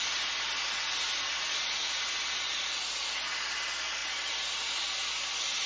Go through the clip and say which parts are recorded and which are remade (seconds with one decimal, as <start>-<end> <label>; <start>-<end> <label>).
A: 0.0-5.7 recorded